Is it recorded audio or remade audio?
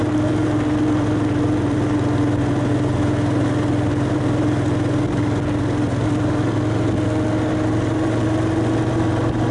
recorded